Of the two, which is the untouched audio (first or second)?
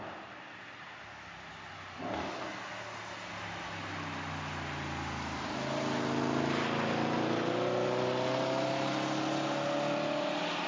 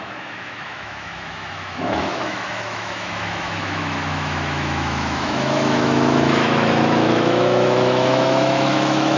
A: first